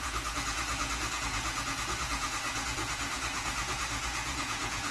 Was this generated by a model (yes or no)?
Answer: yes